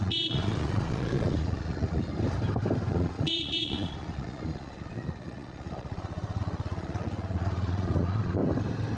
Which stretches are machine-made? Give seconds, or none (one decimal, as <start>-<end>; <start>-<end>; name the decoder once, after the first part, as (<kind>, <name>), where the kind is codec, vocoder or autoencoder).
0.0-2.1 (vocoder, Vocos); 2.9-8.4